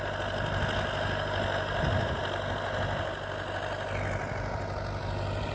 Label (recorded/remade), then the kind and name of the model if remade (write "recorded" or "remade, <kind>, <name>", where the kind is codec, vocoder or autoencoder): recorded